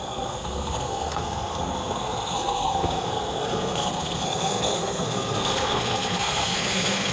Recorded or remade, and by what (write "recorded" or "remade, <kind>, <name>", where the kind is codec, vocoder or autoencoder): remade, codec, SNAC